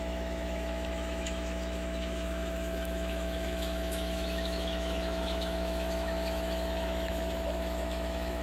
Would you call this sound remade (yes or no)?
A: yes